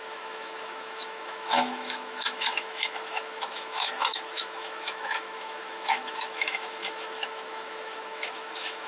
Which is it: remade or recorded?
remade